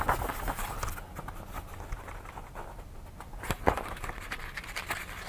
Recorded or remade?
recorded